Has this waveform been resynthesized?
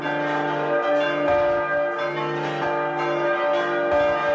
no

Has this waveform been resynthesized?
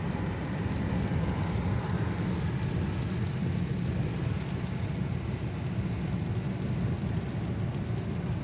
no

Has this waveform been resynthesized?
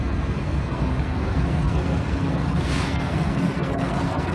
yes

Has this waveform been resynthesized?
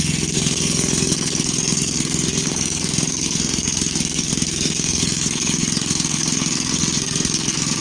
yes